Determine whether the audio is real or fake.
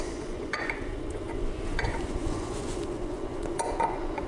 fake